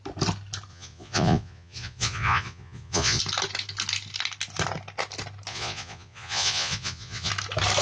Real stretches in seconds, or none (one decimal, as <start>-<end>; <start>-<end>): 0.0-0.7; 3.2-5.5; 7.3-7.8